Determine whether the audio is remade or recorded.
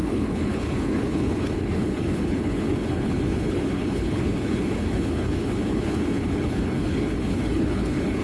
remade